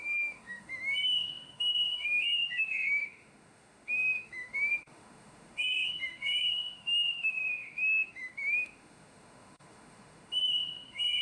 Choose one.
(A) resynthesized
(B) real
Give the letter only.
A